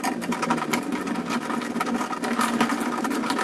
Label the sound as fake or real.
real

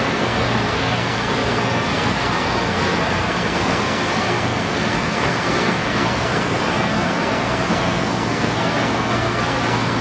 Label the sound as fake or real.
fake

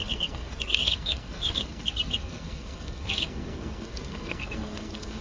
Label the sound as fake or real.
fake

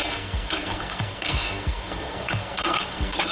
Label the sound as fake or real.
fake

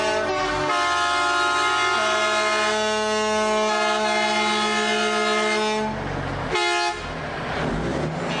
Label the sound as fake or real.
real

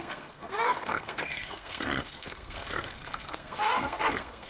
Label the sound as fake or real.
fake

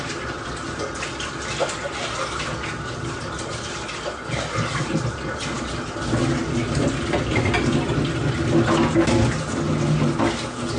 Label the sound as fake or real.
real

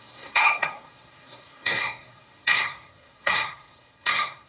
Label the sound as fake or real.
fake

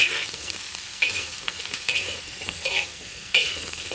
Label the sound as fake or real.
fake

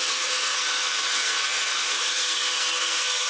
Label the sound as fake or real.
fake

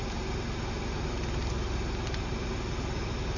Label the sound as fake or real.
real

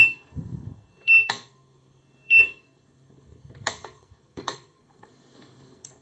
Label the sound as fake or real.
fake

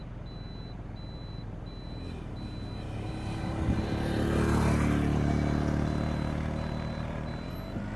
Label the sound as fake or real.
real